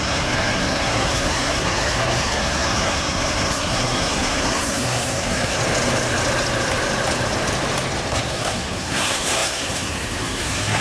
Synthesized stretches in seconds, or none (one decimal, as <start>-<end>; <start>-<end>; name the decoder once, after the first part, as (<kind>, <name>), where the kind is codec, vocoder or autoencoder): 0.0-5.6 (codec, SNAC); 8.1-10.8